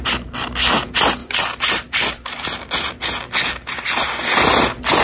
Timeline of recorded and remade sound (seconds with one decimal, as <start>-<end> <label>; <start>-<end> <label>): 0.0-5.0 recorded